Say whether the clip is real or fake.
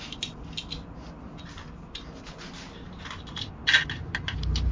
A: real